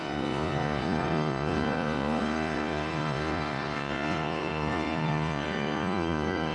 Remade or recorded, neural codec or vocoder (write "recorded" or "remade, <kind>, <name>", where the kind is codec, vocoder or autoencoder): remade, vocoder, Vocos